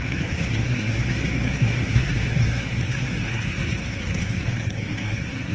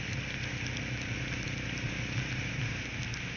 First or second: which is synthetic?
first